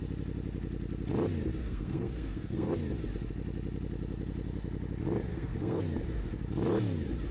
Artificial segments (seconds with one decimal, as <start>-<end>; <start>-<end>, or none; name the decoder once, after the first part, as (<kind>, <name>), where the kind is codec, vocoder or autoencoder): 1.6-2.7 (codec, SNAC); 5.3-5.8